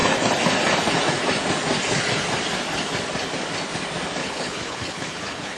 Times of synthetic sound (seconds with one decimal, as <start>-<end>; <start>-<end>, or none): 4.2-5.6